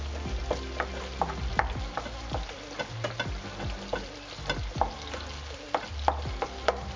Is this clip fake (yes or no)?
no